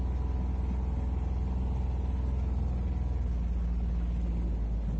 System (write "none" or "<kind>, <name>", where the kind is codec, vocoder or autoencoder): none